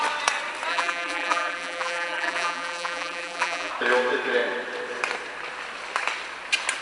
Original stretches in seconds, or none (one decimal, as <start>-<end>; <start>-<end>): 0.0-0.7; 3.7-6.8